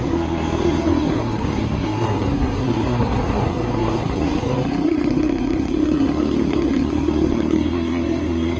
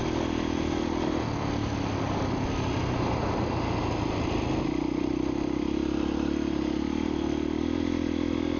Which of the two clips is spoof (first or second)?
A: first